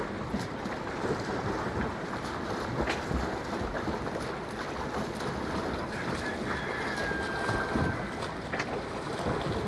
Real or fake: real